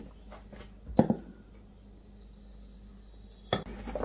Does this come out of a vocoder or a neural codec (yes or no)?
no